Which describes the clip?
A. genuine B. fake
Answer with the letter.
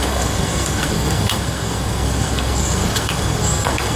B